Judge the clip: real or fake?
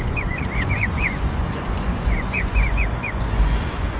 fake